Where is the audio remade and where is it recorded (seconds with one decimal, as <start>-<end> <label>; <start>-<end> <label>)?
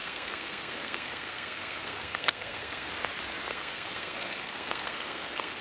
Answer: 0.0-2.9 remade; 2.9-3.5 recorded; 3.5-5.6 remade